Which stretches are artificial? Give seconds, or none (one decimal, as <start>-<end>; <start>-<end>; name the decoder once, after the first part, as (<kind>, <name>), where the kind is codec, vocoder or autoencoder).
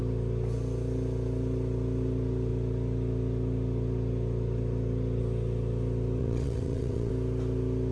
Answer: 6.2-7.1 (vocoder, WaveNeXt)